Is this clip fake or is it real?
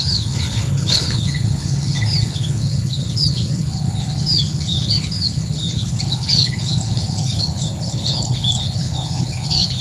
fake